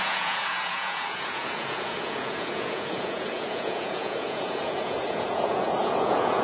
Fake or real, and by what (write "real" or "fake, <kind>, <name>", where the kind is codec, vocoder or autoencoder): fake, vocoder, Vocos